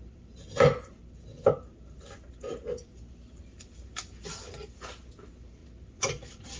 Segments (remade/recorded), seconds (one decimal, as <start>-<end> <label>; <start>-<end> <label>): 0.0-6.6 recorded